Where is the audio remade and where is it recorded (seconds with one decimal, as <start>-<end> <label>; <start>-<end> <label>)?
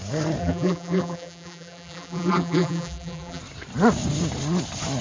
0.0-0.4 recorded; 0.4-3.4 remade; 3.4-5.0 recorded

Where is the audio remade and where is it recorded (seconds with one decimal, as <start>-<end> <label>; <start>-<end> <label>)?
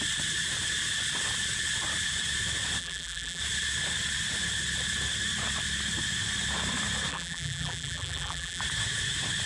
0.0-2.8 recorded; 2.8-3.4 remade; 3.4-7.1 recorded; 7.1-8.6 remade; 8.6-9.5 recorded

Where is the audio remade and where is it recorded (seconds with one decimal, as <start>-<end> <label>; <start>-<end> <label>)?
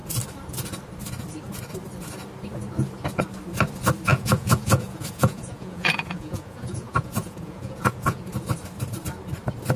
0.0-4.1 recorded; 4.1-8.2 remade; 8.2-9.8 recorded